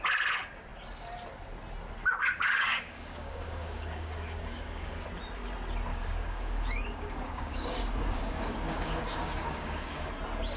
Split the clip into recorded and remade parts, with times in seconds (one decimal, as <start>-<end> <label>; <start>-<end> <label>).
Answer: 0.0-2.2 recorded; 2.2-5.1 remade; 5.1-5.9 recorded; 5.9-10.1 remade; 10.1-10.6 recorded